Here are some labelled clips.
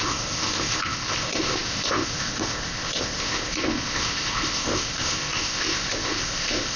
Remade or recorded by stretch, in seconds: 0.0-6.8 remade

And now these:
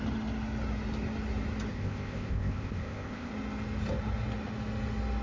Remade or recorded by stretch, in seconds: 0.0-1.7 recorded; 1.7-3.3 remade; 3.3-5.2 recorded

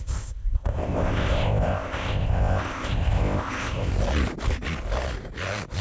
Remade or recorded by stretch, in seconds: 0.0-3.9 remade; 3.9-5.8 recorded